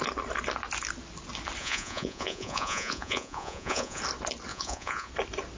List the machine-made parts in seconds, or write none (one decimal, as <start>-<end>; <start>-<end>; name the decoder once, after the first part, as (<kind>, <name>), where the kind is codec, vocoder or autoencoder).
1.6-4.0 (vocoder, Vocos); 4.5-5.1

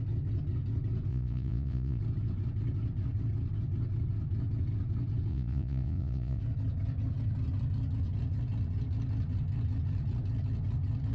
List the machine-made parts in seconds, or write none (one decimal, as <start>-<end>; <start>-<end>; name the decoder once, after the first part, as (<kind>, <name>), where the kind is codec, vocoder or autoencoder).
1.1-2.0 (vocoder, Vocos); 5.3-6.4

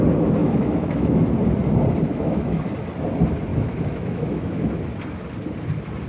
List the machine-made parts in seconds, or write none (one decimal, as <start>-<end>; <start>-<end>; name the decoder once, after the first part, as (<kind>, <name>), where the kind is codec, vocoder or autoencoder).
0.4-1.2 (autoencoder, DAC-VAE); 2.1-2.6; 3.5-4.8

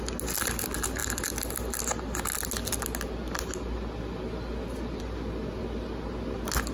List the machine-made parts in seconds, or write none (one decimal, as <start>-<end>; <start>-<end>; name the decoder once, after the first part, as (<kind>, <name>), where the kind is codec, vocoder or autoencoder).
none

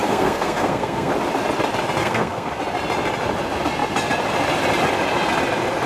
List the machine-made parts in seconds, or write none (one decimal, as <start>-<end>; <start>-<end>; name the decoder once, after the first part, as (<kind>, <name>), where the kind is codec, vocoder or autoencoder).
0.0-1.1 (codec, SNAC); 2.0-2.5